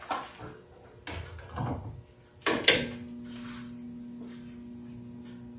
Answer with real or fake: real